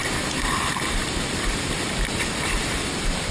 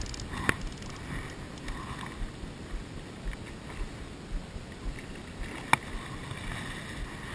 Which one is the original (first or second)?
second